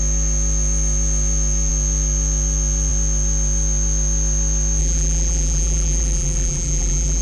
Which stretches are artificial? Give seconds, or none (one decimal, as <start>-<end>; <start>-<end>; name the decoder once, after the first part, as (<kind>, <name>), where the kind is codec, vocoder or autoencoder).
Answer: 4.8-7.2 (vocoder, BigVGAN v2)